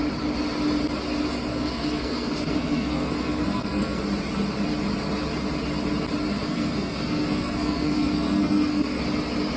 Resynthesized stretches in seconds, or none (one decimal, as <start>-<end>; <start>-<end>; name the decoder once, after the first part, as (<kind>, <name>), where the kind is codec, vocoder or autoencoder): 1.5-4.0 (codec, SNAC); 6.4-9.0